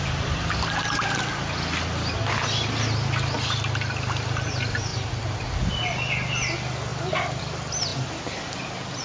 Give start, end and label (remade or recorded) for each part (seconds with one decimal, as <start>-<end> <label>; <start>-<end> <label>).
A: 0.0-6.9 recorded; 6.9-7.4 remade; 7.4-9.0 recorded